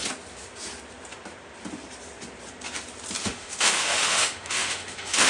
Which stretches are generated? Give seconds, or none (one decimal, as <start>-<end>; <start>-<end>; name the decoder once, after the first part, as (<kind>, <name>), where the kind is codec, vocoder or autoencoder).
3.2-5.3 (autoencoder, DAC-VAE)